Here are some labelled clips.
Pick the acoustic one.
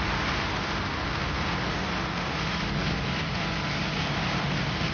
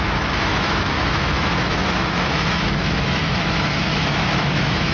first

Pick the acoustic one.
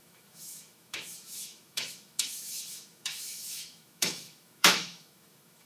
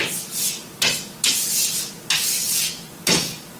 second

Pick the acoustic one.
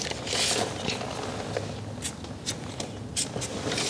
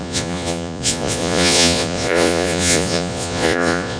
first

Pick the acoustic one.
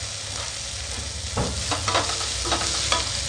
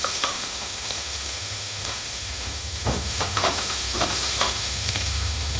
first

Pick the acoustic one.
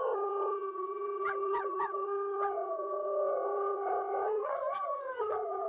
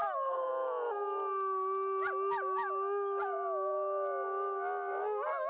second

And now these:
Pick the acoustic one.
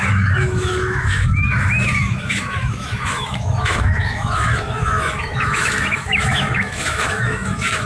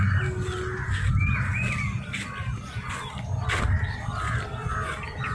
second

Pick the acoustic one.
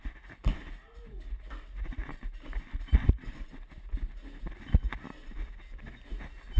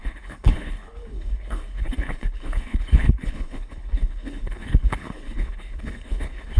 first